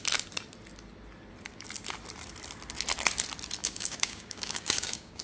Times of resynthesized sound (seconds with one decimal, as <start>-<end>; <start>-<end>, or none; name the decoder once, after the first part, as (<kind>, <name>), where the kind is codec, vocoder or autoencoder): 3.6-5.2 (codec, DAC)